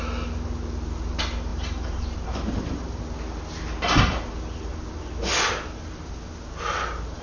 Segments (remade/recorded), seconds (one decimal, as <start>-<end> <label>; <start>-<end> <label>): 0.0-1.5 recorded; 1.5-3.0 remade; 3.0-7.2 recorded